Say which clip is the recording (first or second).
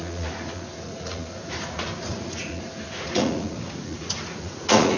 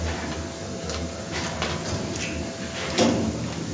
second